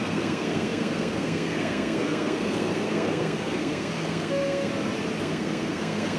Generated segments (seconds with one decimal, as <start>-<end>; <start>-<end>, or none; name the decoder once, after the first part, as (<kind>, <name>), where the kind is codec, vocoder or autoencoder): 0.0-4.7 (codec, SNAC); 5.2-6.2